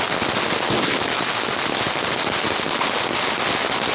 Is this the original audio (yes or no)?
yes